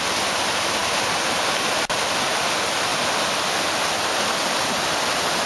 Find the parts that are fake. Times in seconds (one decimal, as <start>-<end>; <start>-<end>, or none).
none